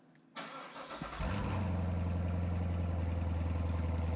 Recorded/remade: recorded